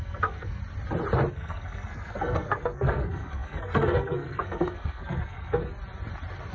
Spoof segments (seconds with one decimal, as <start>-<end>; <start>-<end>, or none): 0.0-0.6; 1.3-5.7